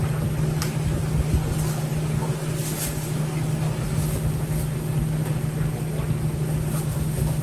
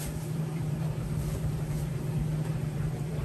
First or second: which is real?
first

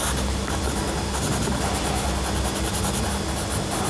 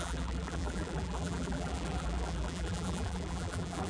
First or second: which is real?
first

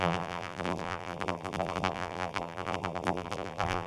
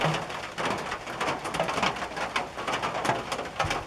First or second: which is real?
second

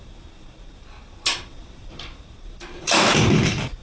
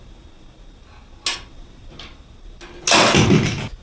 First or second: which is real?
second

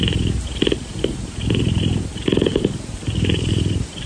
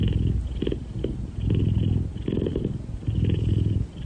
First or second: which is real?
second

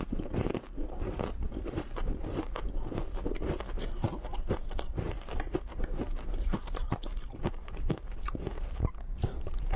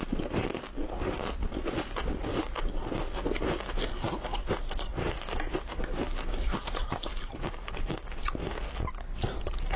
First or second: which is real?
second